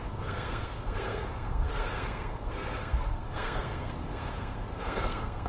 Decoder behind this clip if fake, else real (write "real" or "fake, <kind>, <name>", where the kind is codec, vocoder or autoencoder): fake, codec, SNAC